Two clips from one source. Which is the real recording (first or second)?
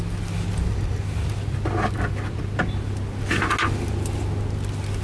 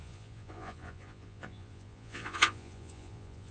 first